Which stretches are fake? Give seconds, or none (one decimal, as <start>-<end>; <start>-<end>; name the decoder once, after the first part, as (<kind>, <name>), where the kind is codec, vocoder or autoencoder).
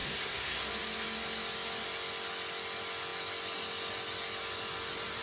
0.0-0.6 (codec, SNAC)